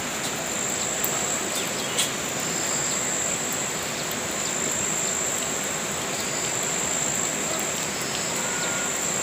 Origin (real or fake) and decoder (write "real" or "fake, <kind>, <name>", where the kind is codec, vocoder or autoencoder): real